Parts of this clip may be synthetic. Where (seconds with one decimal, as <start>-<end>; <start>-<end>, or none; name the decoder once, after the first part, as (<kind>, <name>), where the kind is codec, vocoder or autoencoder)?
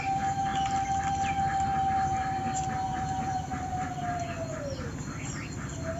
2.9-4.0 (vocoder, BigVGAN v2)